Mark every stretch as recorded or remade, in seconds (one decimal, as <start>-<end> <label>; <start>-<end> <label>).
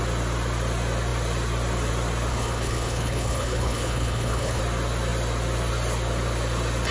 0.0-2.3 recorded; 2.3-4.6 remade; 4.6-6.9 recorded